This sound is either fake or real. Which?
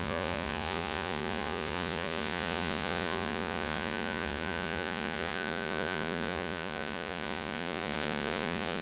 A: fake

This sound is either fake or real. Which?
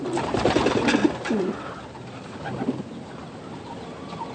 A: real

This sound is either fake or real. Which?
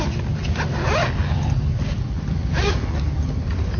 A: real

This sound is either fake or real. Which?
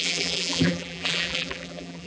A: fake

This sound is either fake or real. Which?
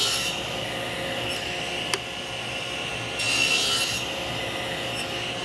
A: real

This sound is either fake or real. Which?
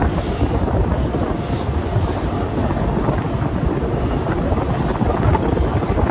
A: real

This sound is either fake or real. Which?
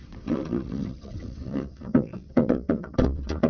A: fake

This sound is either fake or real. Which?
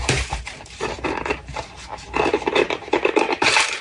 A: fake